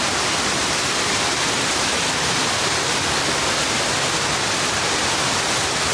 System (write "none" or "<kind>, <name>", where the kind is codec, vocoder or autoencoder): none